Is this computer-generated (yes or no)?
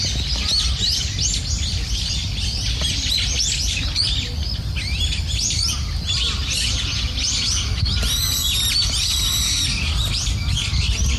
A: no